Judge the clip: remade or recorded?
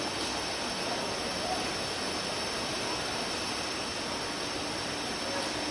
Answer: recorded